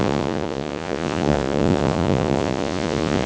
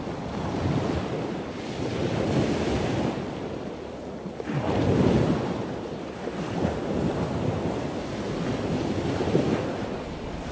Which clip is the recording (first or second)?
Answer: second